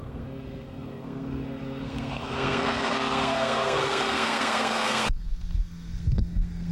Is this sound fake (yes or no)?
yes